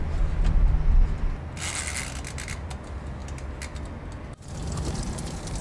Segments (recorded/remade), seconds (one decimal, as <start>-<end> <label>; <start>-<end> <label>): 0.0-5.6 recorded